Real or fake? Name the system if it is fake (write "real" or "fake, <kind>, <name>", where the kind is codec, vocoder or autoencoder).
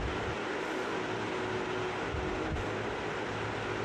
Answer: real